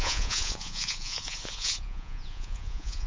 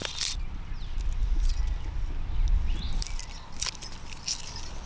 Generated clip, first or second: first